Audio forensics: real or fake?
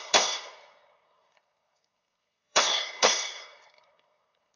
fake